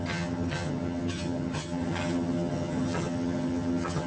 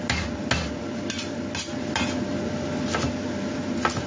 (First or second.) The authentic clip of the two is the second